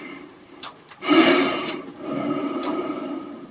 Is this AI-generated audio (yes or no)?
yes